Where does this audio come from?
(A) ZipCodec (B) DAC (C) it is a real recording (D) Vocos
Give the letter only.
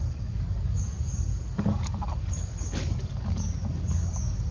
B